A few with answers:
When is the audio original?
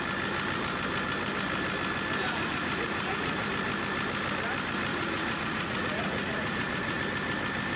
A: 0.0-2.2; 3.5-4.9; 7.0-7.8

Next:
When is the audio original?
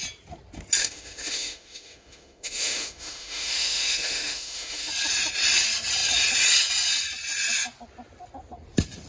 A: 0.0-0.8; 4.9-9.1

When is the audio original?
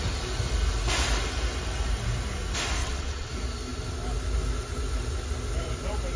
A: 0.0-2.8; 3.3-6.2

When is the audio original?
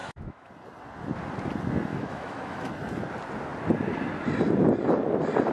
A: 0.5-1.9; 2.7-5.5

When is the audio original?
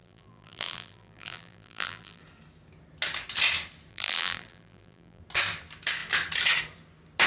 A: 2.2-3.9; 5.2-7.3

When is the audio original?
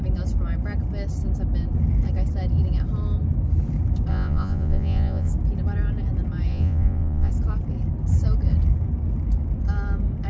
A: 0.0-4.1; 5.3-6.5; 7.3-10.3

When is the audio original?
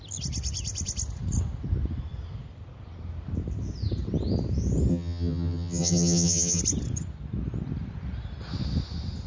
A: 0.0-4.9; 6.6-9.3